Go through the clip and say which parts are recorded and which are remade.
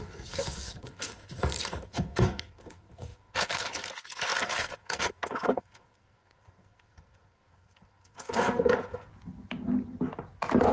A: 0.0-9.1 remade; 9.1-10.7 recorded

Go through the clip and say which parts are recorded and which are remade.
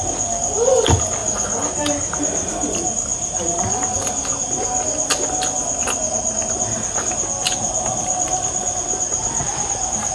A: 0.0-10.1 recorded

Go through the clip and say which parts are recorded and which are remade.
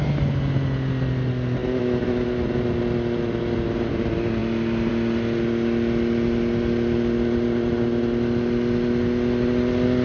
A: 0.0-10.0 recorded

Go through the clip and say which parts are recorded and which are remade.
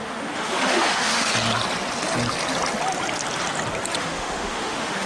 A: 0.0-1.3 remade; 1.3-4.0 recorded; 4.0-5.1 remade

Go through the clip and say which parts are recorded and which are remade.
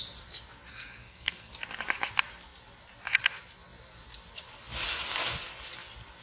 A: 0.0-0.7 recorded; 0.7-1.5 remade; 1.5-6.2 recorded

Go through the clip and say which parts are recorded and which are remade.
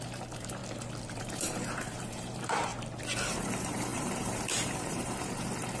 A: 0.0-0.6 remade; 0.6-1.2 recorded; 1.2-2.7 remade; 2.7-3.3 recorded; 3.3-5.8 remade